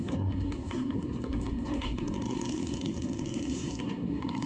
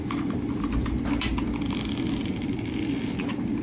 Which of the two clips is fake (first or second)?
first